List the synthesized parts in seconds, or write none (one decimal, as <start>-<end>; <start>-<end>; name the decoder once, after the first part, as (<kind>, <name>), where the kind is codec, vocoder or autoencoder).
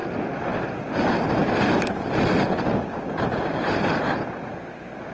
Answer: none